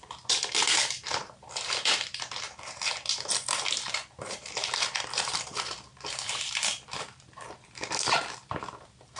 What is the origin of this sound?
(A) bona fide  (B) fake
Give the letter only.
B